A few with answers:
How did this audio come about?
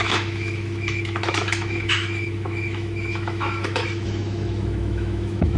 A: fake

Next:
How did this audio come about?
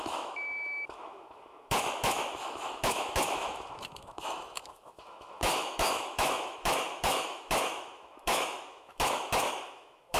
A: fake